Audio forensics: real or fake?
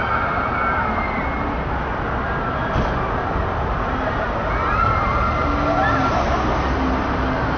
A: real